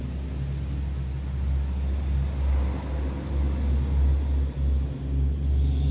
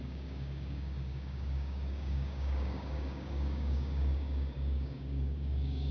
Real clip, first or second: first